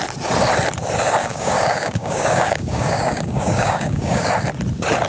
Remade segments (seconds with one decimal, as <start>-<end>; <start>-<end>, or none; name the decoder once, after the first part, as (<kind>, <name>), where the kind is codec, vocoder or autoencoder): 1.2-4.3 (codec, DAC)